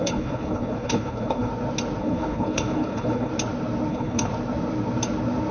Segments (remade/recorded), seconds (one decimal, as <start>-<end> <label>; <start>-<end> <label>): 0.0-1.5 remade; 1.5-2.0 recorded; 2.0-3.3 remade; 3.3-3.9 recorded; 3.9-4.3 remade; 4.3-5.5 recorded